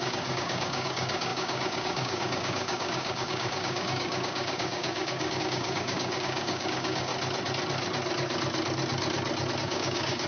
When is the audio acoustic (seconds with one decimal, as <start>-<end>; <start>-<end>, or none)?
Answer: 7.1-9.6